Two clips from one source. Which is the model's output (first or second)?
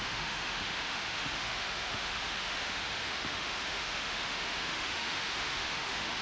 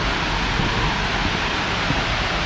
first